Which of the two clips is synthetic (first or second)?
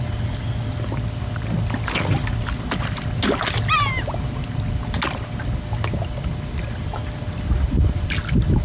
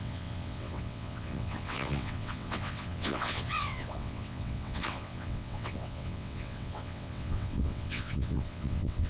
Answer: second